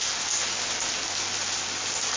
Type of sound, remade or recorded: recorded